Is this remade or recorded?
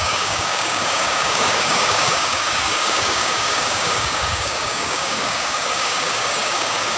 remade